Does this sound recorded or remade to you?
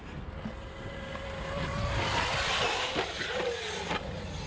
recorded